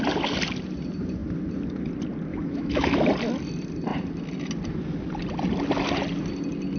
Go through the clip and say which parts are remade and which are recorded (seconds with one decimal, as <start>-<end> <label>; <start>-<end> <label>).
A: 0.0-2.3 recorded; 2.3-3.0 remade; 3.0-6.8 recorded